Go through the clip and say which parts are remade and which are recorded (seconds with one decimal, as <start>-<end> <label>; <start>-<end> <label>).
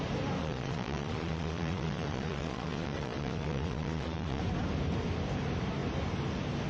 0.0-0.4 recorded; 0.4-4.4 remade; 4.4-6.7 recorded